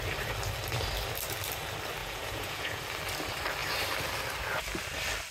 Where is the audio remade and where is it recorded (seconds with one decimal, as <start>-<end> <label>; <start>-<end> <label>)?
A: 0.0-2.0 recorded; 2.0-2.8 remade; 2.8-5.3 recorded